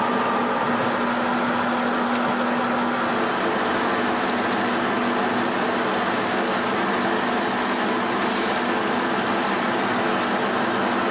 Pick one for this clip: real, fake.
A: real